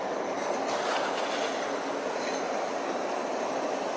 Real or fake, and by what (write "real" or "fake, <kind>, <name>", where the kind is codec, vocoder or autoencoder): real